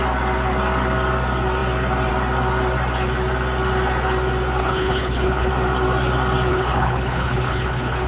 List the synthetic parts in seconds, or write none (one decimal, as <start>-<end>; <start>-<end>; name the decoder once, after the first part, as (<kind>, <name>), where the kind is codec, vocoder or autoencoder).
4.6-5.5 (codec, HILCodec); 6.5-8.1